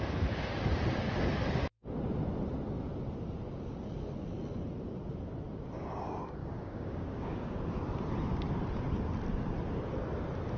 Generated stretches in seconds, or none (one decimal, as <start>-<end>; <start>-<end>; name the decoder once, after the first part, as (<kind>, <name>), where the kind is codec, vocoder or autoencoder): 6.4-7.6 (codec, DAC)

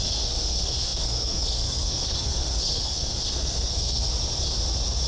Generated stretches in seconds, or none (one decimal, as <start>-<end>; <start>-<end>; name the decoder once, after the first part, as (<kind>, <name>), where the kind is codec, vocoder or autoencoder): 0.0-4.1 (codec, SNAC)

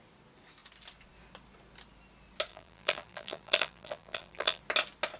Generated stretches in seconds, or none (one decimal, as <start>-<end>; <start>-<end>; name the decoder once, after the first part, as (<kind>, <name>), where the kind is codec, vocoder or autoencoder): 2.5-4.6 (vocoder, BigVGAN v2)

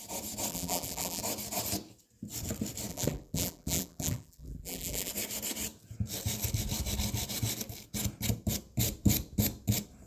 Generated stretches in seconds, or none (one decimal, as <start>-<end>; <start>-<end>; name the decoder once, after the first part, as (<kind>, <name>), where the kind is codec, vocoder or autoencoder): 0.5-1.2 (vocoder, BigVGAN v2); 2.9-5.1